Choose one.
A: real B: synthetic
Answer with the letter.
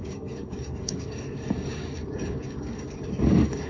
B